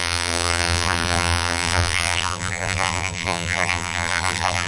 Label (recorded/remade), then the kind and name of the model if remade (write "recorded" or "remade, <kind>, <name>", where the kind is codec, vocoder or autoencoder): remade, vocoder, BigVGAN v2